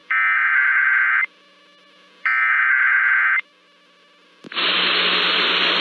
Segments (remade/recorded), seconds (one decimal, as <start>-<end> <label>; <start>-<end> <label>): 0.0-3.5 remade; 3.5-5.8 recorded